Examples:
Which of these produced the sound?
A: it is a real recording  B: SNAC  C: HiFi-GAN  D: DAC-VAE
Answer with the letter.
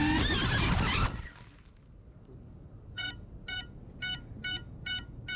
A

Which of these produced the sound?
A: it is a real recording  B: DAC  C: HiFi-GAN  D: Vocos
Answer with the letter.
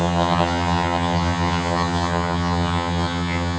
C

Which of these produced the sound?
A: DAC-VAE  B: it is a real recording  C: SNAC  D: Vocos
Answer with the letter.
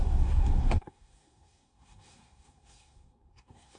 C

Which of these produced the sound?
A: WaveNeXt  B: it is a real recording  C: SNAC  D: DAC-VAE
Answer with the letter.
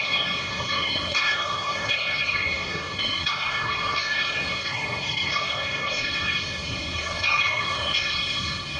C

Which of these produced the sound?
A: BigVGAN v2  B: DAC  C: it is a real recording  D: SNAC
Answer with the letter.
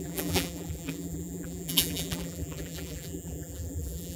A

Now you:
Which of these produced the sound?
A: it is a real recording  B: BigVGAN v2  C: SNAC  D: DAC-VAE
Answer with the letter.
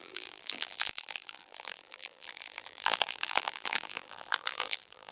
B